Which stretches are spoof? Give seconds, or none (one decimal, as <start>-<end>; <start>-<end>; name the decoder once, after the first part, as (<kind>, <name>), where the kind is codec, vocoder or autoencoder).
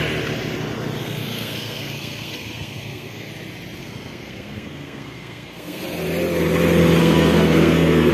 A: 1.0-3.3 (codec, SNAC); 3.8-5.8; 7.0-8.1